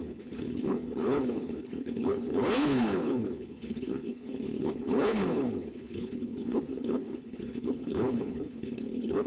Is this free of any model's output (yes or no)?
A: no